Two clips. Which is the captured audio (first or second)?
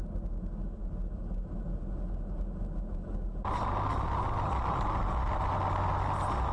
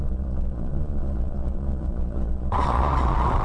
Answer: first